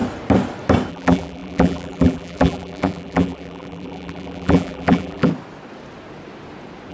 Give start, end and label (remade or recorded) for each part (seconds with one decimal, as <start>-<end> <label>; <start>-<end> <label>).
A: 0.0-0.9 recorded; 0.9-5.3 remade; 5.3-6.9 recorded